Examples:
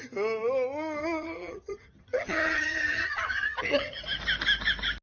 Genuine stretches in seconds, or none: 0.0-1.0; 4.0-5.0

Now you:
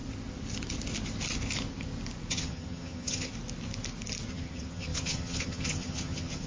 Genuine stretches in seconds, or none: 0.0-2.3; 3.3-4.3

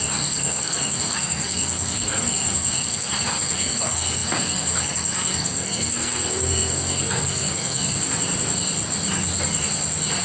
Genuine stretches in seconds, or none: 7.8-10.2

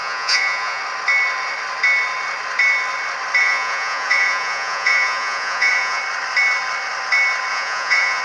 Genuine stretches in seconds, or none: 0.8-3.4; 6.0-7.5

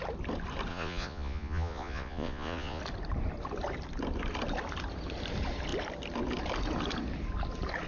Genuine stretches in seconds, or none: 0.0-0.7; 2.8-7.9